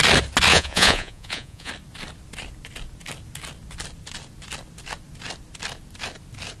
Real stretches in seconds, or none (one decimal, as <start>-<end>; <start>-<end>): 0.0-0.5; 1.7-6.6